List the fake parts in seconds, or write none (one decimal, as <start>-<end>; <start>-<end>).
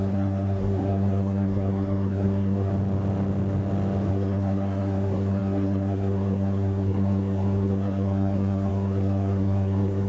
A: 0.0-2.7; 4.1-10.1